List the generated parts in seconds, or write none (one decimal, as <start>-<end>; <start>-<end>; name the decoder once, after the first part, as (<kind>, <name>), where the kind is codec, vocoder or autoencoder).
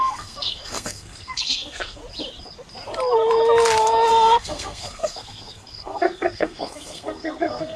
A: 0.0-2.0 (codec, SNAC); 4.1-7.8